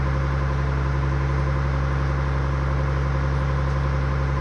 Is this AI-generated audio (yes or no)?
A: no